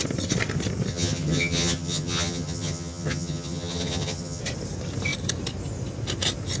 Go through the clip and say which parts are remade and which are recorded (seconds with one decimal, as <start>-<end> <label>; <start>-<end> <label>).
0.0-0.9 recorded; 0.9-4.4 remade; 4.4-6.6 recorded